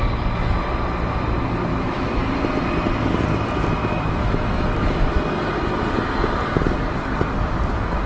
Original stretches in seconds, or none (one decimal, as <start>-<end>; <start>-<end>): 0.0-1.7; 2.3-3.8; 5.1-8.1